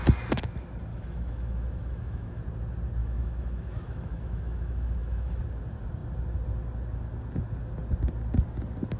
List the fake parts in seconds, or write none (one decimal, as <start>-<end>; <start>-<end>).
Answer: 0.9-2.4; 3.0-5.4